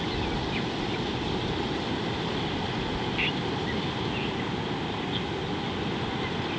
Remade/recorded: recorded